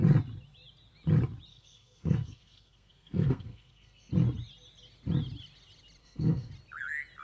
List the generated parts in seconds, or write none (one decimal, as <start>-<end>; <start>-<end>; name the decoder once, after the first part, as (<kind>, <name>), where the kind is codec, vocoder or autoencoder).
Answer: 1.5-4.1 (codec, SNAC); 6.0-6.5